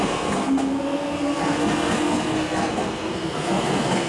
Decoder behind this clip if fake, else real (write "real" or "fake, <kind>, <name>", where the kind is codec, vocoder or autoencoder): fake, codec, SNAC